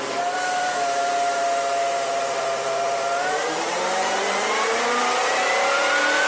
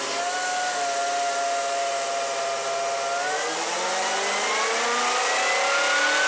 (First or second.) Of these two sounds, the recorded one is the second